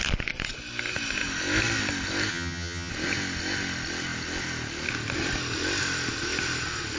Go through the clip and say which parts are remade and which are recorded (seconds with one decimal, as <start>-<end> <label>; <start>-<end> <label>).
0.0-2.3 recorded; 2.3-2.9 remade; 2.9-7.0 recorded